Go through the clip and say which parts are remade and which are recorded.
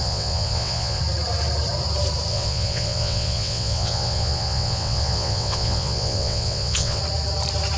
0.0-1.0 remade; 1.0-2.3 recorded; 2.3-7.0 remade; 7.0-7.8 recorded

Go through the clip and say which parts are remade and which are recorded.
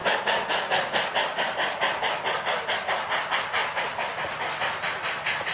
0.0-5.5 recorded